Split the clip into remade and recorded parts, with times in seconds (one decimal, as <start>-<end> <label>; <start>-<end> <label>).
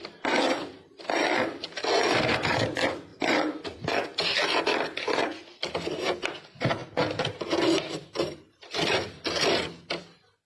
0.0-3.1 recorded; 3.1-5.7 remade; 5.7-6.8 recorded; 6.8-10.0 remade; 10.0-10.5 recorded